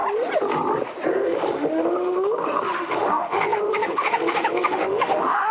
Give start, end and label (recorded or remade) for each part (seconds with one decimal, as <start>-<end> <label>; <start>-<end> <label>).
0.0-1.1 recorded; 1.1-5.5 remade